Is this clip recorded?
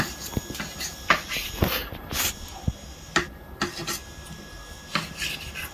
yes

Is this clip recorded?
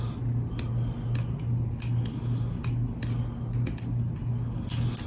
yes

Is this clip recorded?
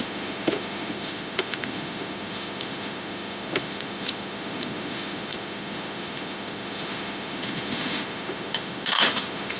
no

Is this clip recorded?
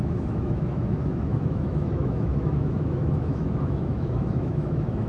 no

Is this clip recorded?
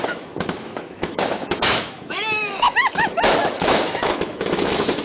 no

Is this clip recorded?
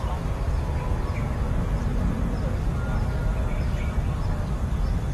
yes